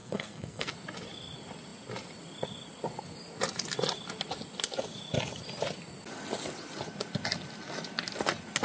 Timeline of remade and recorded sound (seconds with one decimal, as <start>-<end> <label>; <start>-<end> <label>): 0.0-0.7 remade; 0.7-8.6 recorded